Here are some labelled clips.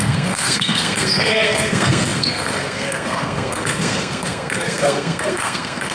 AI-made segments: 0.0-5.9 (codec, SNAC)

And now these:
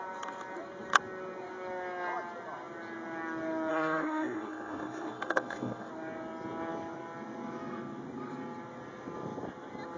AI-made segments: 3.7-5.9 (codec, SNAC)

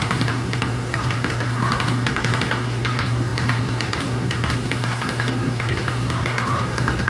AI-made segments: 0.0-7.1 (codec, SNAC)

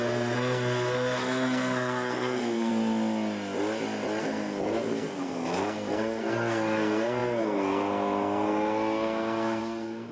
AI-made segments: 0.0-2.7 (codec, SNAC); 4.2-10.1